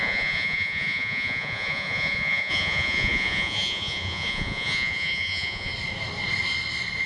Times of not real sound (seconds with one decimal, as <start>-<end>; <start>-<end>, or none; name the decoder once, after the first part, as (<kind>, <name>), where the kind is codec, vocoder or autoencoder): 0.0-5.7 (vocoder, Vocos)